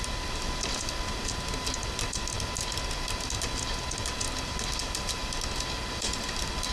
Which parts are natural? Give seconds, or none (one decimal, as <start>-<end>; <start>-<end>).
0.0-6.7